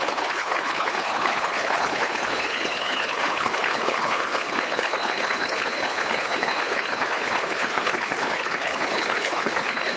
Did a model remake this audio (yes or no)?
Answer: yes